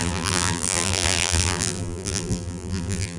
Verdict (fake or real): fake